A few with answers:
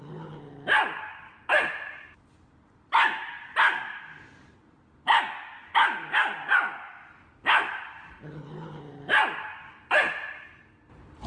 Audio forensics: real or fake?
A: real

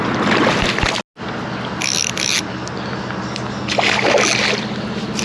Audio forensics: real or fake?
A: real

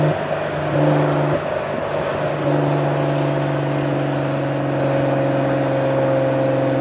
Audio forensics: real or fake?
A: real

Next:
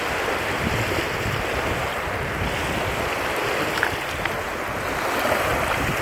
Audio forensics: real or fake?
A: fake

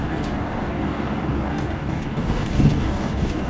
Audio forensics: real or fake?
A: fake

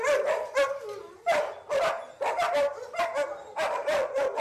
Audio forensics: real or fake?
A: real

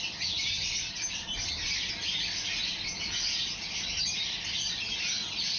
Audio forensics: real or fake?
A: real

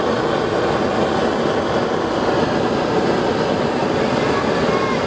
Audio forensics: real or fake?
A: real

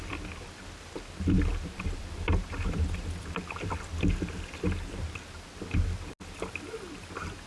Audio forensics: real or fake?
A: real